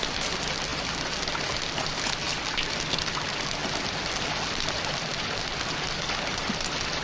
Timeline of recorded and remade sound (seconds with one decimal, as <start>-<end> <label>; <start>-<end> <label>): 0.0-7.0 recorded